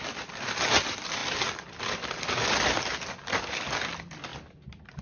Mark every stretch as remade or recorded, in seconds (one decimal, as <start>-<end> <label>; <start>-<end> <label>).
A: 0.0-5.0 recorded